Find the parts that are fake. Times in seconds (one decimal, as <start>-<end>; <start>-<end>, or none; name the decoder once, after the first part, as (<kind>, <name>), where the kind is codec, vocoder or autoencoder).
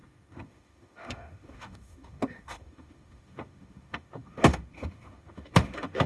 0.0-6.1 (autoencoder, DAC-VAE)